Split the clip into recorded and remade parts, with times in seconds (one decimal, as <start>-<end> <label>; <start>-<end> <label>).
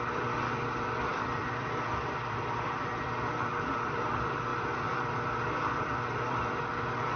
0.0-7.2 remade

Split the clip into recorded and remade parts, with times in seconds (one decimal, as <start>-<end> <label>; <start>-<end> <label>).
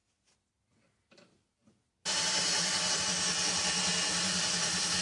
0.0-5.0 recorded